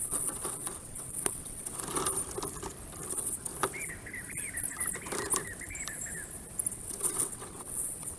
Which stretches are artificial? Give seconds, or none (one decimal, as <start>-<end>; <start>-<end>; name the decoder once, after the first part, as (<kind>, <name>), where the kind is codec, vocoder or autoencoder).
0.0-1.8 (vocoder, WaveNeXt); 3.1-3.5; 6.7-8.2